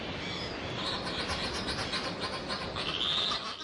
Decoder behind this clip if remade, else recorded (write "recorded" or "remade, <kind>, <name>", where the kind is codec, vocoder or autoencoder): recorded